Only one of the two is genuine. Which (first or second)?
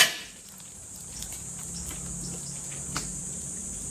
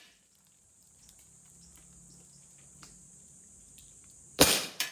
first